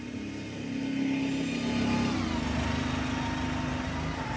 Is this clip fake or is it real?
real